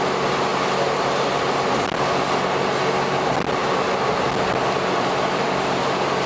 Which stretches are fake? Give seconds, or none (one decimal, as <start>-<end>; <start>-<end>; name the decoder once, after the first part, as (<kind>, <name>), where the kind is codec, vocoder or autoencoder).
none

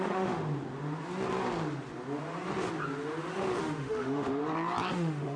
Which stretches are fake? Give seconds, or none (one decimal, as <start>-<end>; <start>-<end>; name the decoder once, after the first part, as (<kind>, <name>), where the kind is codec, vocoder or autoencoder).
0.0-0.4 (autoencoder, DAC-VAE); 3.6-4.4; 4.9-5.4

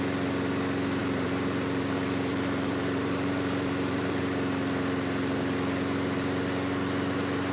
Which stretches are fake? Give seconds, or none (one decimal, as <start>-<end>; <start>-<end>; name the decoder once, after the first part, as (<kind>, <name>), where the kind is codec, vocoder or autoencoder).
1.0-4.2 (vocoder, BigVGAN v2)

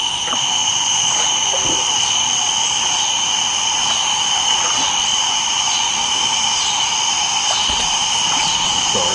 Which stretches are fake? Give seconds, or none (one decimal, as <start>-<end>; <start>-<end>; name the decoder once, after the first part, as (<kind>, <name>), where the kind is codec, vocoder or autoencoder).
0.6-1.6 (vocoder, Vocos); 5.1-5.9